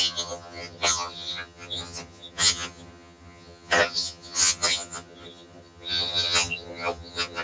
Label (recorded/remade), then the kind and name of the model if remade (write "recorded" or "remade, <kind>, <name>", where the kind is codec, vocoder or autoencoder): remade, vocoder, HiFi-GAN